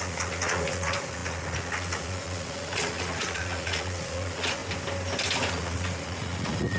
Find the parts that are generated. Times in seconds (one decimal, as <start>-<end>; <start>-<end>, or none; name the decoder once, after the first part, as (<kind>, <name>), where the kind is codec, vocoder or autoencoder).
0.0-4.6 (vocoder, Vocos); 5.5-6.8